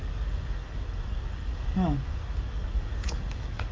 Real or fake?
fake